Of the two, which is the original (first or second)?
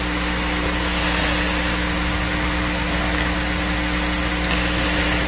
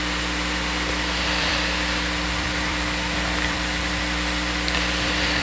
first